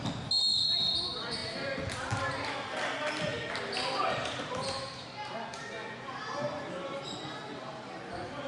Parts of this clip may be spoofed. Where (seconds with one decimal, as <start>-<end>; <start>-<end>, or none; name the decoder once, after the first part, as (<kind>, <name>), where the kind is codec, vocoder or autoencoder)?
none